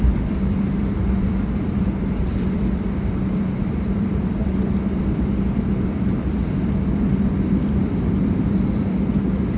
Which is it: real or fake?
fake